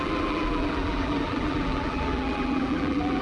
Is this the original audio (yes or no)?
no